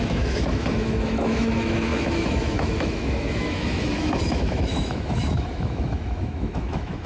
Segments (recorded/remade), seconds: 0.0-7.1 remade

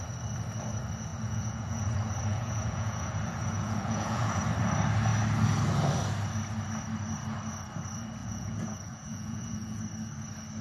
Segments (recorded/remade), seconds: 0.0-1.1 recorded; 1.1-1.9 remade; 1.9-2.3 recorded; 2.3-4.4 remade; 4.4-8.2 recorded; 8.2-9.8 remade; 9.8-10.6 recorded

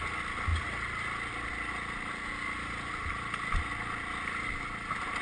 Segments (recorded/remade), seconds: 0.0-5.2 recorded